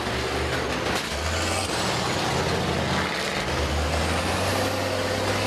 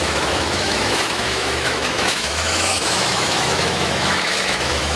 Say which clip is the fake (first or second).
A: second